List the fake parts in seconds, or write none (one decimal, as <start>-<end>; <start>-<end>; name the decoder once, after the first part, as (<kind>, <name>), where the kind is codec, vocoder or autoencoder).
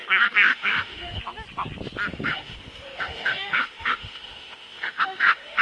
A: 0.0-1.2 (autoencoder, DAC-VAE); 2.1-5.6